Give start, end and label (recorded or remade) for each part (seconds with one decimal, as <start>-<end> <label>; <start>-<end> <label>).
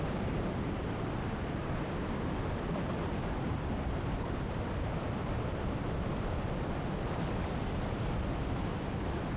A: 0.0-1.6 recorded; 1.6-4.6 remade; 4.6-9.4 recorded